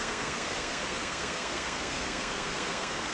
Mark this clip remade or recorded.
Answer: remade